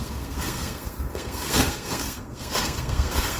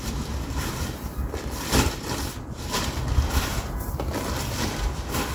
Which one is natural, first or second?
second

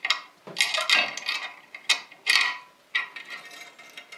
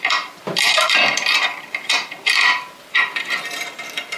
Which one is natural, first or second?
first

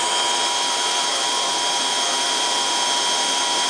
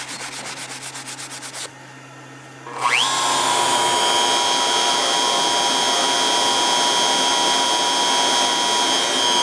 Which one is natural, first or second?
second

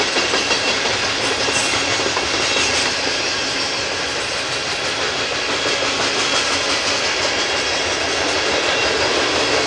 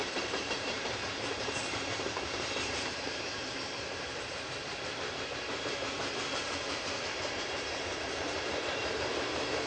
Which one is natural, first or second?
first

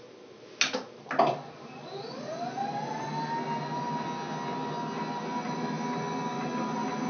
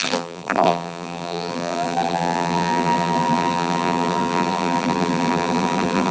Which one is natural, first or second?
first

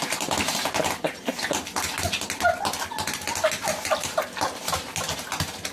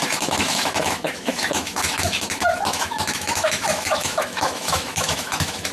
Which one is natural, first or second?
first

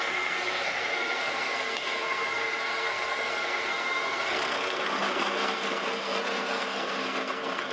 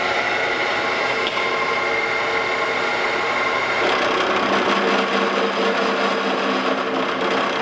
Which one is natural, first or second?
second